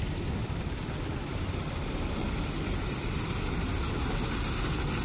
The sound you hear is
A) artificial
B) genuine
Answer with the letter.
B